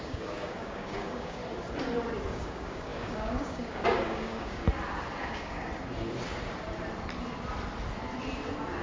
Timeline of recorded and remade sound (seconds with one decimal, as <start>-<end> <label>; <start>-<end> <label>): 0.0-1.4 remade; 1.4-2.3 recorded; 2.3-4.6 remade; 4.6-5.2 recorded; 5.2-5.7 remade; 5.7-8.8 recorded